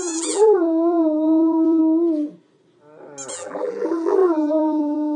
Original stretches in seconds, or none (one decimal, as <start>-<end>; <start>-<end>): 1.8-3.3